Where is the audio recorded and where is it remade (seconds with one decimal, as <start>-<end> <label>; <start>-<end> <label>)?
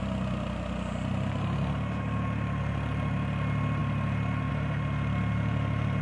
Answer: 0.0-6.0 recorded